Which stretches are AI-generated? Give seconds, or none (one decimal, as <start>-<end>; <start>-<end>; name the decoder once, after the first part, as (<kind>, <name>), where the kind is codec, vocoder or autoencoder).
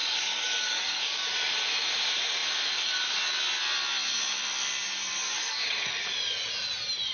0.0-1.3 (codec, DAC)